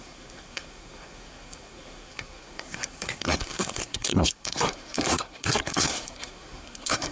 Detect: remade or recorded remade